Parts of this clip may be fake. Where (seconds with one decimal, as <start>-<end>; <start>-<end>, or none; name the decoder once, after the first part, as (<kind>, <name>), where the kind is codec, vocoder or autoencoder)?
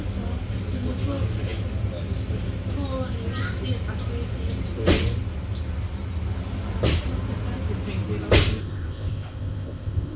8.6-10.2 (codec, ZipCodec)